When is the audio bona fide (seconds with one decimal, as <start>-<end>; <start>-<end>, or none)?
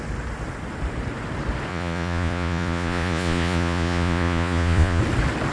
0.0-1.7; 5.0-5.5